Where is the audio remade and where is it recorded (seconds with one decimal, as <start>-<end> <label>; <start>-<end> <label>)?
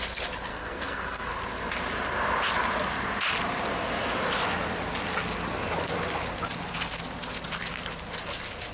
0.0-0.5 recorded; 0.5-1.3 remade; 1.3-8.7 recorded